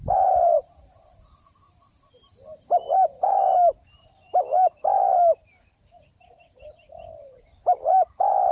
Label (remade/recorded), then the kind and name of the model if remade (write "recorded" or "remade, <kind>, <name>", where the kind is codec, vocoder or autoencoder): remade, vocoder, BigVGAN v2